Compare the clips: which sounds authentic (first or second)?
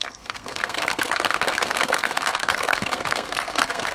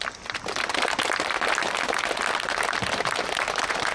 second